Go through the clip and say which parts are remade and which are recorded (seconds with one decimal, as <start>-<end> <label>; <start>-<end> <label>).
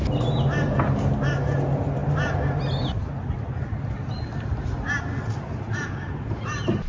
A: 0.0-6.9 recorded